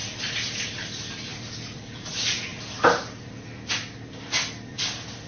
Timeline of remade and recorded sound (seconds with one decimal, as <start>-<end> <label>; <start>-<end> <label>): 0.0-0.7 remade; 0.7-4.7 recorded; 4.7-5.3 remade